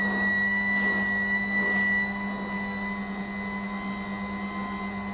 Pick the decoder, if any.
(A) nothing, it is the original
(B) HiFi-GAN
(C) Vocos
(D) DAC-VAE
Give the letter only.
A